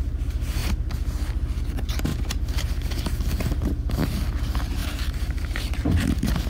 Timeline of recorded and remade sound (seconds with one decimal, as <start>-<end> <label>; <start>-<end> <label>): 0.0-4.8 recorded; 4.8-6.0 remade; 6.0-6.5 recorded